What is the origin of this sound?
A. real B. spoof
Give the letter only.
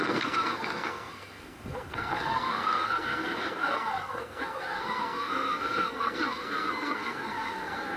B